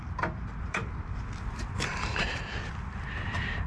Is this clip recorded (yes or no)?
yes